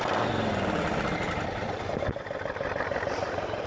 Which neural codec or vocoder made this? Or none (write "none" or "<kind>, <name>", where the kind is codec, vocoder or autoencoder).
vocoder, BigVGAN v2